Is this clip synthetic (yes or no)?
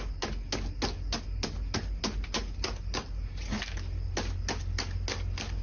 no